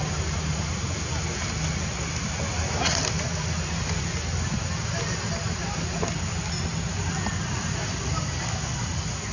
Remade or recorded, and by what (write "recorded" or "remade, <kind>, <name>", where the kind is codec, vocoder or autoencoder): recorded